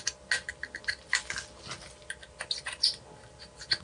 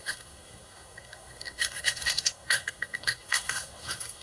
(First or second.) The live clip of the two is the first